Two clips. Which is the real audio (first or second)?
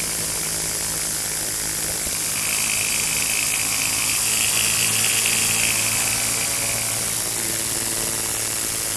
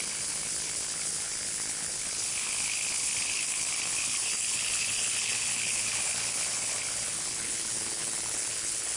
first